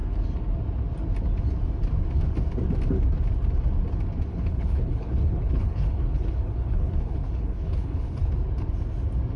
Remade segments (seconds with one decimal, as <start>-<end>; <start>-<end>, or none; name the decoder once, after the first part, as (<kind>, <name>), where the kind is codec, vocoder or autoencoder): 4.3-8.3 (codec, HILCodec)